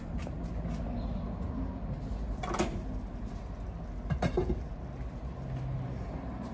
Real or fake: real